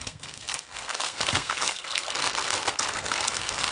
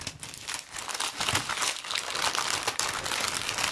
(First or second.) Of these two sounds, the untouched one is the second